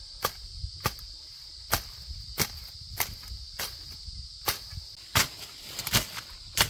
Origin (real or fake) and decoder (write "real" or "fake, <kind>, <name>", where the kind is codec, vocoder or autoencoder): real